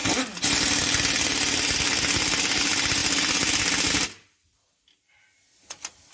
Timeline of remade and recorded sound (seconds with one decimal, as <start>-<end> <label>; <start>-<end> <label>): 0.0-6.1 recorded